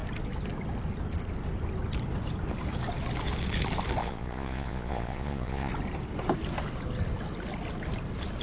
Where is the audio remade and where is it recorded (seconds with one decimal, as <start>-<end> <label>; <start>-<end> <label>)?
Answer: 0.0-4.0 recorded; 4.0-5.7 remade; 5.7-8.4 recorded